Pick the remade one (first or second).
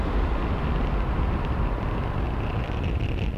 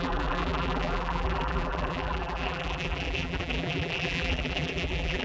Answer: second